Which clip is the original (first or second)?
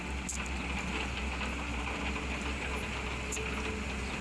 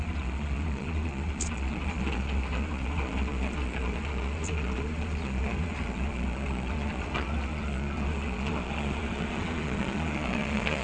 first